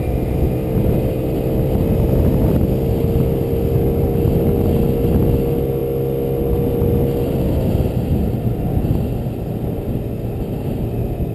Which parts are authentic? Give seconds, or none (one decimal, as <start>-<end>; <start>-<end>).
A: 0.0-11.3